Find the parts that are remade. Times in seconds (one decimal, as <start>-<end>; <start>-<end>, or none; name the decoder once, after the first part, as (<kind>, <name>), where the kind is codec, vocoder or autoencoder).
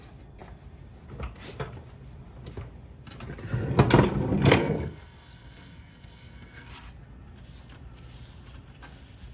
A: 4.6-6.7 (codec, SNAC)